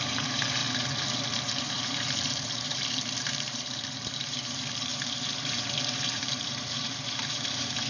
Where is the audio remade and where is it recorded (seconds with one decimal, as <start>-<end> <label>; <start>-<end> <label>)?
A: 0.0-0.6 remade; 0.6-1.6 recorded; 1.6-7.9 remade